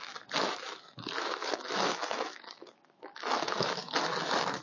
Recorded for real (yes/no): no